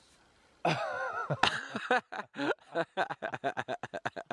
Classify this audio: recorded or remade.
recorded